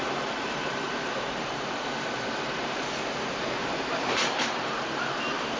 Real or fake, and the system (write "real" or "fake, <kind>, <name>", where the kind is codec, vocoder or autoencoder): fake, vocoder, BigVGAN v2